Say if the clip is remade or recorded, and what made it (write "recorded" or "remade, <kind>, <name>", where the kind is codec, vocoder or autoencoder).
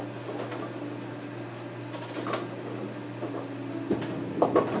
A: recorded